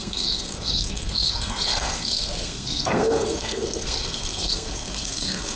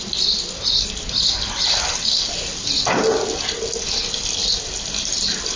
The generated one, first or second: first